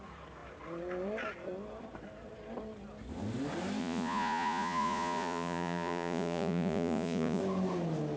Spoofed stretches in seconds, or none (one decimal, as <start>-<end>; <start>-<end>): 3.8-7.4